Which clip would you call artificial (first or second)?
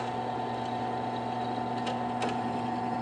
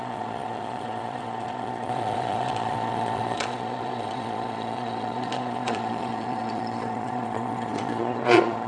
second